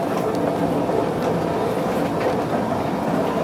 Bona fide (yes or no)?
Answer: yes